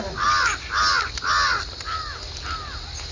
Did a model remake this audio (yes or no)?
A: no